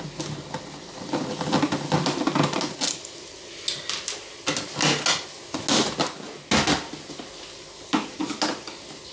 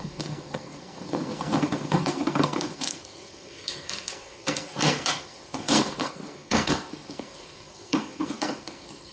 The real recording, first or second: first